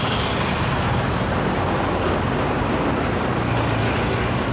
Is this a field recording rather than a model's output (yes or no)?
yes